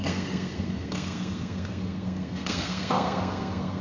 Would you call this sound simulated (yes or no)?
yes